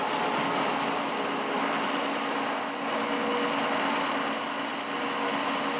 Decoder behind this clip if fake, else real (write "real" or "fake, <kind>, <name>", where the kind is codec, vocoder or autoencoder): real